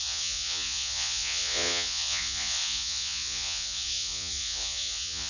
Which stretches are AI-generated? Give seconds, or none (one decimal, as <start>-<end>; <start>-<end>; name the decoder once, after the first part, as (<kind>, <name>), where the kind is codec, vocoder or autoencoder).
0.0-5.3 (vocoder, Vocos)